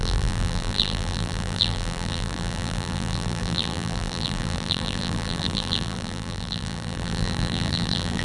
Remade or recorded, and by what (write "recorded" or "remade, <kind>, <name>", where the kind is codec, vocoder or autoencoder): remade, vocoder, BigVGAN v2